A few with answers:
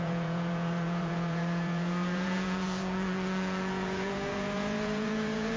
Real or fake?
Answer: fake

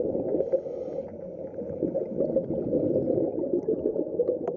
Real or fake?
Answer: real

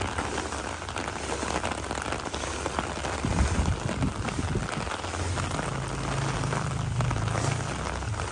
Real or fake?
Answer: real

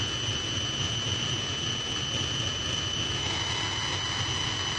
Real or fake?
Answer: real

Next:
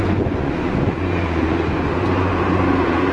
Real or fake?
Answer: fake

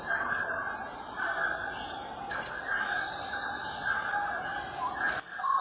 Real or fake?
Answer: real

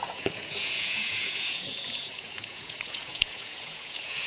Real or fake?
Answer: fake